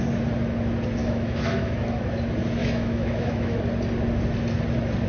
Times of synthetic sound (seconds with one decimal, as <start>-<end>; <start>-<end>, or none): 1.0-2.1; 2.6-3.6